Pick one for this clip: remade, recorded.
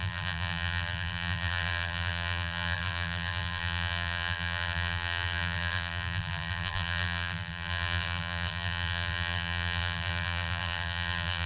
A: remade